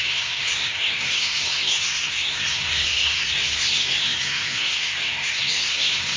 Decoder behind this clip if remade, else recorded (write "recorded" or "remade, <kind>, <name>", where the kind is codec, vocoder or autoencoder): remade, codec, SNAC